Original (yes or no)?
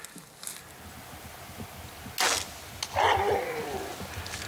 yes